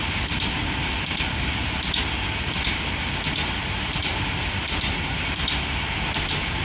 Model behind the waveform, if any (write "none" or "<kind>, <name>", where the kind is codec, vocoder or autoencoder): none